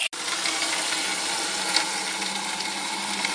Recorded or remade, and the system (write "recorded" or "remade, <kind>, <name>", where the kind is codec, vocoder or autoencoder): recorded